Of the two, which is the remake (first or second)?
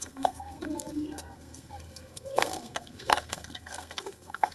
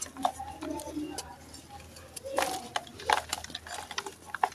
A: first